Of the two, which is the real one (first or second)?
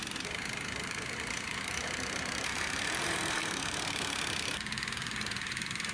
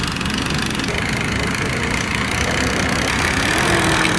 second